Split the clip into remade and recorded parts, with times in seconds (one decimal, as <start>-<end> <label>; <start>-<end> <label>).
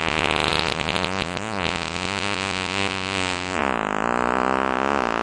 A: 0.0-5.2 recorded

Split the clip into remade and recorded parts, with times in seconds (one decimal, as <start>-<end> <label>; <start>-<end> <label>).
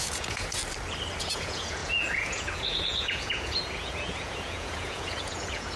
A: 0.0-0.6 remade; 0.6-1.2 recorded; 1.2-5.8 remade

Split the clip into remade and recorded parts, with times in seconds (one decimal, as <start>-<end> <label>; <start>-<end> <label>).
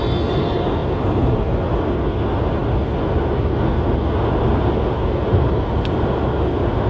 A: 0.0-0.8 recorded; 0.8-1.7 remade; 1.7-6.9 recorded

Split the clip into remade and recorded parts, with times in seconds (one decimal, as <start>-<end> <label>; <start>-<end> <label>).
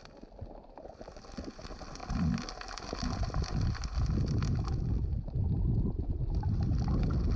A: 0.0-7.4 recorded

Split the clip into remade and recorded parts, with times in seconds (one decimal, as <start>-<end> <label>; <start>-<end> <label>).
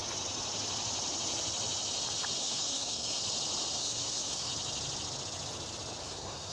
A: 0.0-2.4 recorded; 2.4-3.2 remade; 3.2-3.8 recorded; 3.8-4.5 remade; 4.5-6.0 recorded; 6.0-6.5 remade